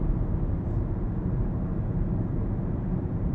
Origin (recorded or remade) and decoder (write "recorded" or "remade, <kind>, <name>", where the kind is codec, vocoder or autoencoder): remade, vocoder, BigVGAN v2